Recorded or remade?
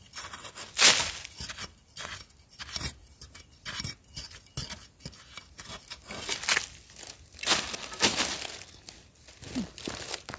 recorded